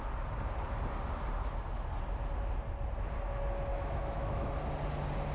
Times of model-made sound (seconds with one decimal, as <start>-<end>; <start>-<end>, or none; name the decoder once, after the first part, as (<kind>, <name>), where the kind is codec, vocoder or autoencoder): 3.7-4.5 (autoencoder, DAC-VAE)